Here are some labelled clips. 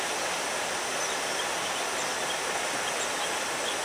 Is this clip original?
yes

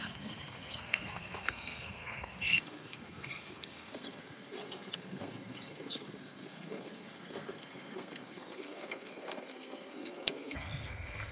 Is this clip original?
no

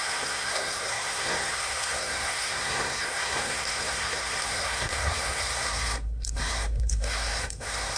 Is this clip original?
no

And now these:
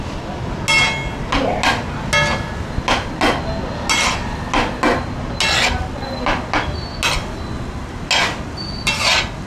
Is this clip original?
yes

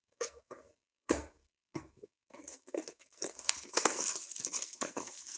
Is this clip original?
no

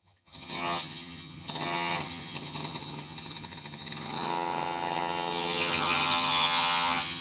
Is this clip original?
no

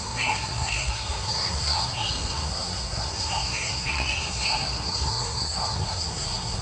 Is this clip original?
no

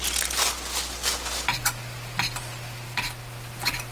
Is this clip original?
yes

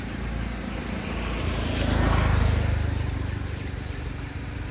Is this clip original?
yes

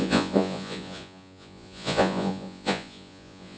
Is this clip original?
no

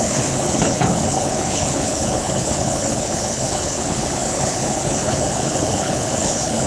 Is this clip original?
no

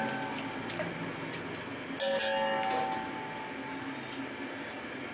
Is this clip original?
yes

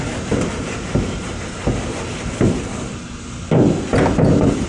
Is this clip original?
yes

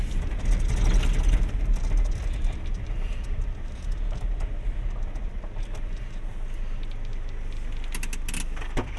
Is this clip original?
yes